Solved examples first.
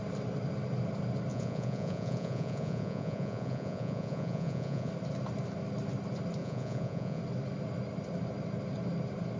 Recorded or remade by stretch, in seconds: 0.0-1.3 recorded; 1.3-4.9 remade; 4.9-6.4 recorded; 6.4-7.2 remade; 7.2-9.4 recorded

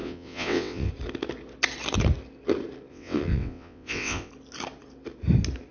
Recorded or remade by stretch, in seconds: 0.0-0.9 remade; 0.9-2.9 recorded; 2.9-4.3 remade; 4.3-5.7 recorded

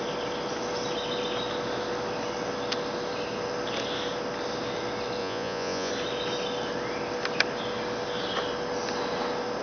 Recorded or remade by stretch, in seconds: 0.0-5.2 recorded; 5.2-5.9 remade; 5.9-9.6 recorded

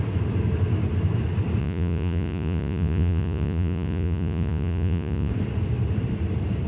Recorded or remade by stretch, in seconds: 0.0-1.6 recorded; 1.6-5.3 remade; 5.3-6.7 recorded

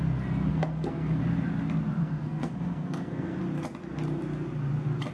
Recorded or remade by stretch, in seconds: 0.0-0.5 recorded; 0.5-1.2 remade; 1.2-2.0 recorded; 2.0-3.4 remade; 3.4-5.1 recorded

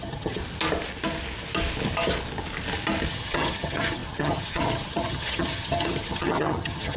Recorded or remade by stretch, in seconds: 0.0-0.4 remade; 0.4-3.1 recorded; 3.1-7.0 remade

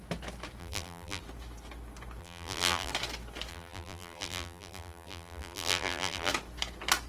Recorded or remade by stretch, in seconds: 0.0-0.6 recorded; 0.6-1.2 remade; 1.2-2.2 recorded; 2.2-2.9 remade; 2.9-3.5 recorded; 3.5-6.3 remade; 6.3-7.1 recorded

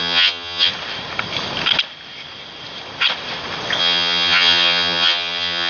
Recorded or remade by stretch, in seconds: 0.0-0.7 remade; 0.7-3.8 recorded; 3.8-5.7 remade